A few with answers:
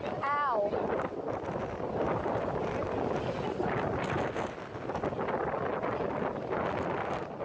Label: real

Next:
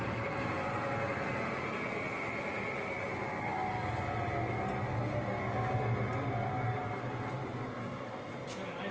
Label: real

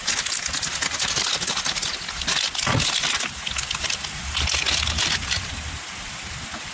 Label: real